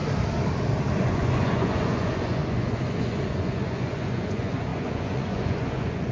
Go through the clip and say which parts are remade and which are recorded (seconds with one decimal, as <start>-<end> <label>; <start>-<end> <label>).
0.0-1.0 recorded; 1.0-6.1 remade